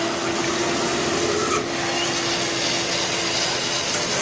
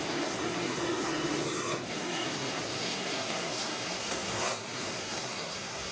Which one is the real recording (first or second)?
first